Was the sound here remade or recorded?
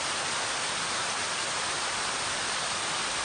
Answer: recorded